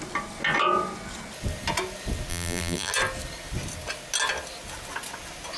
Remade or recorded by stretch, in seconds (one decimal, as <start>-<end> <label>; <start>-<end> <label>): 0.0-2.3 recorded; 2.3-2.9 remade; 2.9-5.6 recorded